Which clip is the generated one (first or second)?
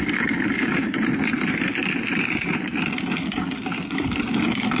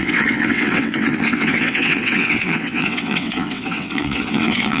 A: second